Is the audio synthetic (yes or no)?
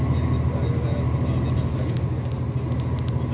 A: no